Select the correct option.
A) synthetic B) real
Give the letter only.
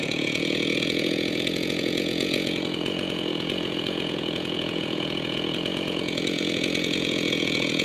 A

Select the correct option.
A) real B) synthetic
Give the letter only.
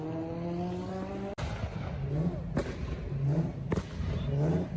A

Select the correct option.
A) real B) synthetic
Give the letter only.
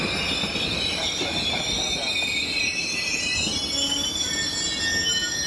A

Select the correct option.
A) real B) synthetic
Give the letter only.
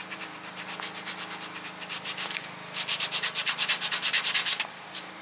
B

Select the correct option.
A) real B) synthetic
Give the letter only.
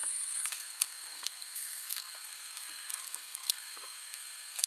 B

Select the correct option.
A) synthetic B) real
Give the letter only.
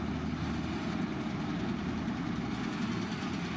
B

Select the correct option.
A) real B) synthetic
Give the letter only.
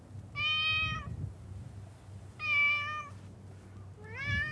A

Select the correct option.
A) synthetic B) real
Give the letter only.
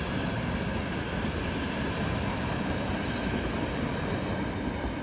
B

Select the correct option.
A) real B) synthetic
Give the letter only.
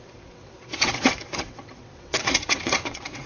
B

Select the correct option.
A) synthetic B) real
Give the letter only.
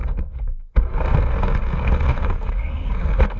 A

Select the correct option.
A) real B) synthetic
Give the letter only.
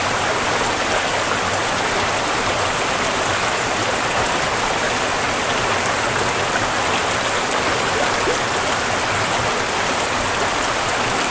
A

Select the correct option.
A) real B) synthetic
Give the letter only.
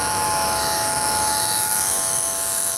B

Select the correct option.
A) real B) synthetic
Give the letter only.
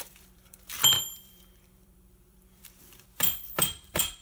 B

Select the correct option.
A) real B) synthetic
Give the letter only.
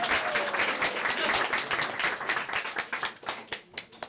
A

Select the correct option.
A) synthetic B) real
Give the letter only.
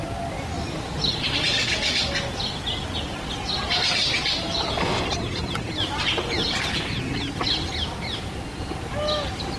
B